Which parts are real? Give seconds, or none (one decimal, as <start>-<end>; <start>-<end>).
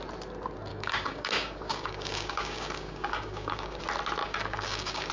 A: 0.0-0.7; 3.8-4.2